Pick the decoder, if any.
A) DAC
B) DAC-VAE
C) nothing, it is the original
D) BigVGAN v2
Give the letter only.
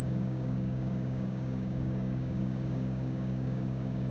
A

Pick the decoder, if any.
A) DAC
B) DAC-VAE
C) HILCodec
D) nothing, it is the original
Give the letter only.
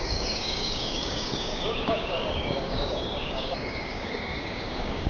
A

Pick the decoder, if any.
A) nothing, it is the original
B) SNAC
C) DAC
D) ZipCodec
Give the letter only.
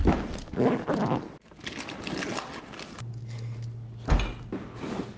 A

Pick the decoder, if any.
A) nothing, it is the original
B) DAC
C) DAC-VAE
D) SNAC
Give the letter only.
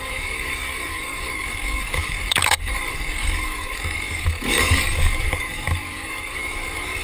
B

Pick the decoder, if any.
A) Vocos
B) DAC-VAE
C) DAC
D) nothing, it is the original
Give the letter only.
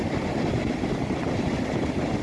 D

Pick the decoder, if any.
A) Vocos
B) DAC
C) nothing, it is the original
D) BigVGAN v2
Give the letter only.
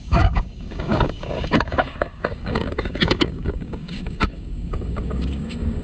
B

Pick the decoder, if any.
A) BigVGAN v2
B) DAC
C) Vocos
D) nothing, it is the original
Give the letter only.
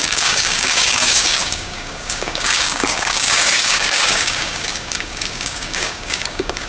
B